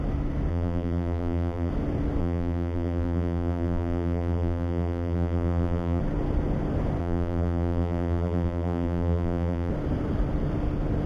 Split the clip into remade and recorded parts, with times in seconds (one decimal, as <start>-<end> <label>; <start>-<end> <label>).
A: 0.0-0.5 recorded; 0.5-1.7 remade; 1.7-2.2 recorded; 2.2-6.0 remade; 6.0-7.0 recorded; 7.0-9.7 remade; 9.7-11.1 recorded